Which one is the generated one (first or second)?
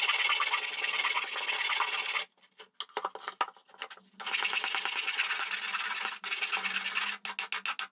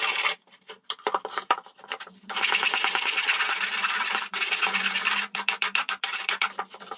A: second